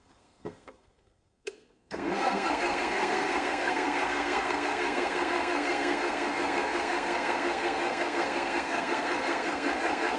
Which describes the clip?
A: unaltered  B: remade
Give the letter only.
B